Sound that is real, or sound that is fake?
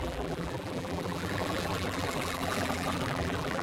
fake